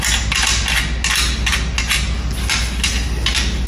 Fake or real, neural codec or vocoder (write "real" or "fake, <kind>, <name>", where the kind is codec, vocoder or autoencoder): real